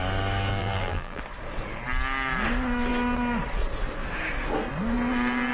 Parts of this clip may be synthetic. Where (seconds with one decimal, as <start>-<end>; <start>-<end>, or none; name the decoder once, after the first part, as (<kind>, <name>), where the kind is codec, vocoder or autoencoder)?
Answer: 0.6-1.2 (vocoder, BigVGAN v2)